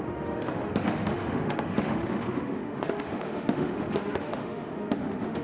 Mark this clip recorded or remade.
remade